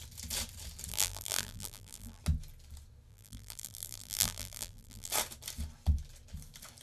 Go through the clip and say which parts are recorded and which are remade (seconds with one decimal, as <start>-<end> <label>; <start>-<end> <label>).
0.0-0.9 recorded; 0.9-2.2 remade; 2.2-3.1 recorded; 3.1-5.1 remade; 5.1-6.8 recorded